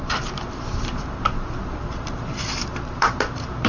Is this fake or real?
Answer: fake